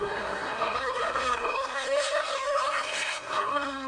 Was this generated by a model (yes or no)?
yes